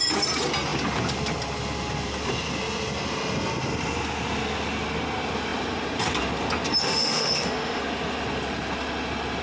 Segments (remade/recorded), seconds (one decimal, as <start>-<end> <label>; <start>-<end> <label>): 0.0-6.8 recorded; 6.8-7.8 remade; 7.8-9.4 recorded